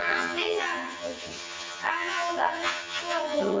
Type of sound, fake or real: fake